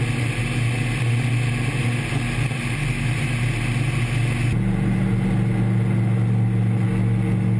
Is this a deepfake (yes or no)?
no